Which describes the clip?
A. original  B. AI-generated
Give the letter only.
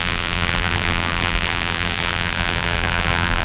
B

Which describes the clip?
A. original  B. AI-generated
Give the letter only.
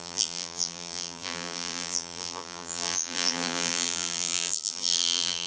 B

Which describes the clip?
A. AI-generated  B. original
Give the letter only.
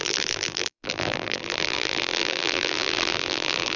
A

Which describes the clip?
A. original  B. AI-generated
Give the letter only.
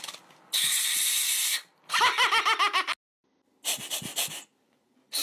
A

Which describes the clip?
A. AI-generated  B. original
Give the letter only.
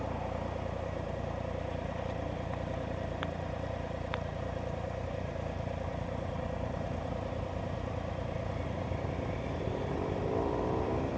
A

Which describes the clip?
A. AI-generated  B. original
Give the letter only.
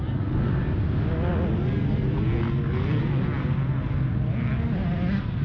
B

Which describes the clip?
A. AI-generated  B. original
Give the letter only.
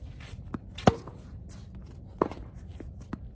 B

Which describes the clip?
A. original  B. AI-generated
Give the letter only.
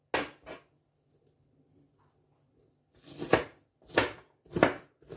A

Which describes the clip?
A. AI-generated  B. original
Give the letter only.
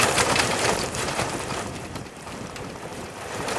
A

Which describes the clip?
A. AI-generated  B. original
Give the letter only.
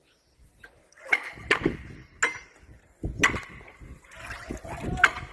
B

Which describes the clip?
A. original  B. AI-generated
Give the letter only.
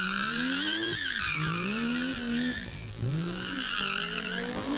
B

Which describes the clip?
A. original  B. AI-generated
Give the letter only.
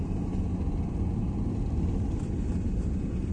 B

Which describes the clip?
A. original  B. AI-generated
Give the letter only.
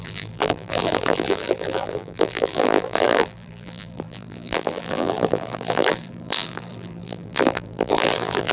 B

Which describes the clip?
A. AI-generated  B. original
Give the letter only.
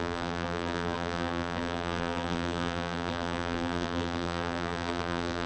A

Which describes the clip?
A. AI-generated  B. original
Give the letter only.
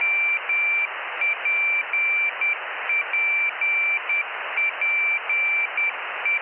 B